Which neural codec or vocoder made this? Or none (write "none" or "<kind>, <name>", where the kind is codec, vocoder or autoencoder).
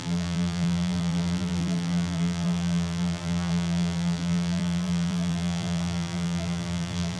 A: vocoder, BigVGAN v2